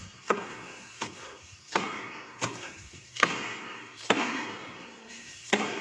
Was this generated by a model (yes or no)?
yes